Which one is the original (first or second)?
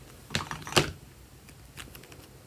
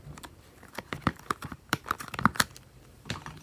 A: first